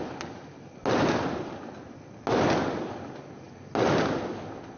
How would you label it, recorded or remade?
recorded